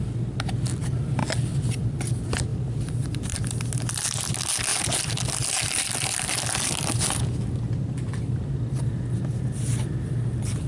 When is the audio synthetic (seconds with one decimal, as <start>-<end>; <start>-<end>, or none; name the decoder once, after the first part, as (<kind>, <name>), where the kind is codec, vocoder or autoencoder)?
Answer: 2.5-3.4 (vocoder, BigVGAN v2)